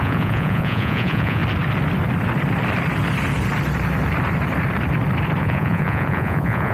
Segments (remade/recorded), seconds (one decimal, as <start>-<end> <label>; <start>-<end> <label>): 0.0-1.4 remade; 1.4-5.4 recorded; 5.4-6.7 remade